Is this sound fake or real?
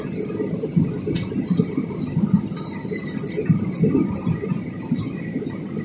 fake